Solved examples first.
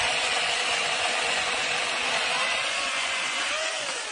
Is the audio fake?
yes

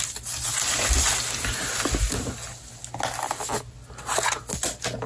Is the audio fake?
no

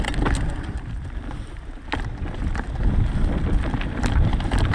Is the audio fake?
no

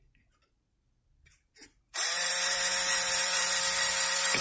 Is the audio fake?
yes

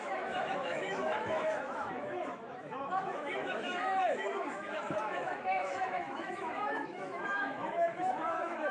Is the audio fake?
yes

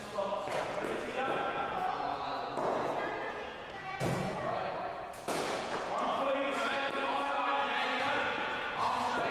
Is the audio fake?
yes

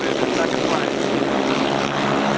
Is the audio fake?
no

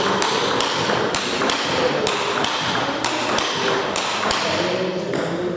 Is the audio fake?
no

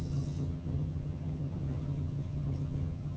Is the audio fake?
yes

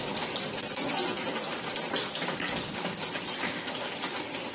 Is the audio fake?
no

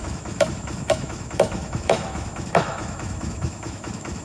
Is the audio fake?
yes